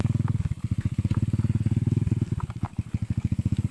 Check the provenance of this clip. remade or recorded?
recorded